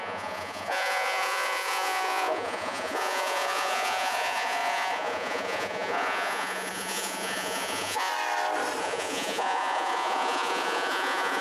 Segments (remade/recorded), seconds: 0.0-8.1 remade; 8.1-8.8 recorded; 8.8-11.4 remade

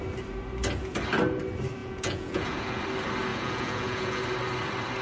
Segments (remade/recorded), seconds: 0.0-1.8 recorded; 1.8-2.8 remade; 2.8-3.3 recorded; 3.3-4.2 remade; 4.2-5.0 recorded

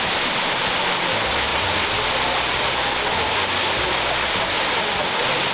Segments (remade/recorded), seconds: 0.0-5.5 recorded

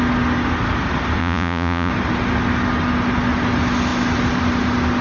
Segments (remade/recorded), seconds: 0.0-1.2 recorded; 1.2-1.9 remade; 1.9-5.0 recorded

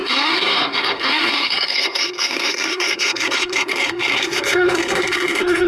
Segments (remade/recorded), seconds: 0.0-5.7 remade

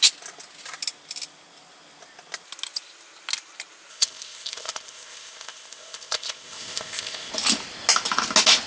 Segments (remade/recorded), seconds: 0.0-3.9 recorded; 3.9-7.3 remade; 7.3-8.7 recorded

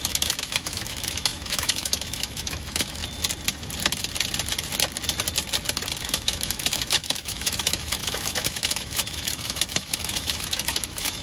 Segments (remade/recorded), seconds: 0.0-3.0 remade; 3.0-6.0 recorded; 6.0-11.2 remade